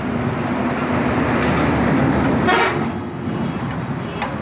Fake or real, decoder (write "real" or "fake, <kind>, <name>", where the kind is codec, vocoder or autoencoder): real